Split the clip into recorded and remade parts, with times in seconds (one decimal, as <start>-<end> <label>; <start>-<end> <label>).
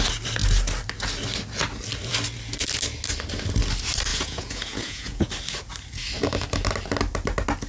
0.0-4.1 recorded; 4.1-5.3 remade; 5.3-7.7 recorded